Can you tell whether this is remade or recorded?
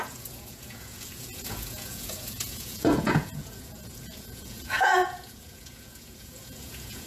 remade